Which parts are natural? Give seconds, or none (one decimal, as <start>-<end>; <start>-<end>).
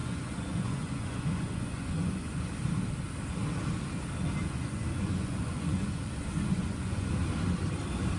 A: 2.5-4.4; 7.1-8.2